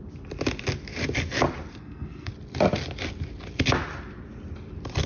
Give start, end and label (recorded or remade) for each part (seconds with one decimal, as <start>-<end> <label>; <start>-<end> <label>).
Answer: 0.0-1.7 recorded; 1.7-2.3 remade; 2.3-5.1 recorded